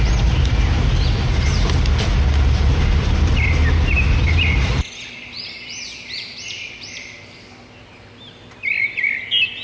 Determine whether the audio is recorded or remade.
recorded